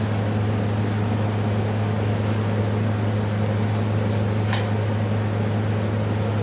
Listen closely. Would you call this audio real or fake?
real